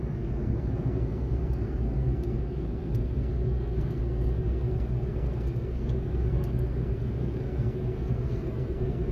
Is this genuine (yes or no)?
no